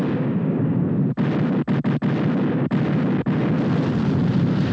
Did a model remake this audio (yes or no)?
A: no